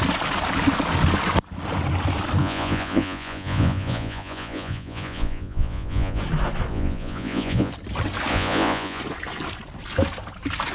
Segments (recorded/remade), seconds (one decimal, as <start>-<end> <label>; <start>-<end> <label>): 0.0-2.4 recorded; 2.4-6.2 remade; 6.2-6.7 recorded; 6.7-7.7 remade; 7.7-8.3 recorded; 8.3-9.0 remade; 9.0-10.7 recorded